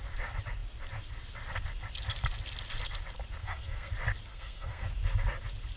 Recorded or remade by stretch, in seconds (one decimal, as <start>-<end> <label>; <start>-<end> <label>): 0.0-3.4 recorded; 3.4-3.9 remade; 3.9-4.3 recorded; 4.3-4.9 remade; 4.9-5.8 recorded